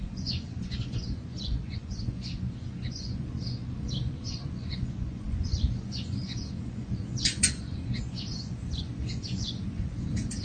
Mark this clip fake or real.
fake